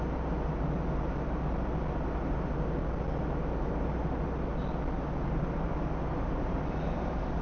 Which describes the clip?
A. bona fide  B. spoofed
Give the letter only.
A